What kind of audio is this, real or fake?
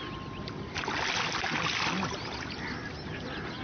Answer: real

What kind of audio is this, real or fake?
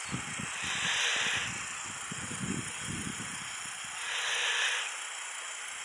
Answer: real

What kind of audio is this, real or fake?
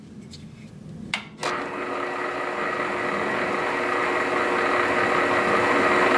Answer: real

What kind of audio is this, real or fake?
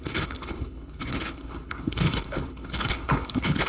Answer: fake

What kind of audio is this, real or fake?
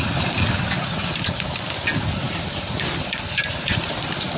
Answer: real